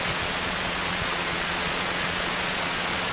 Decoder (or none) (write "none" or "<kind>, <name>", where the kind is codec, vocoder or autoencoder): vocoder, Vocos